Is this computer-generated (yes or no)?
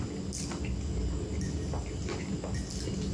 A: no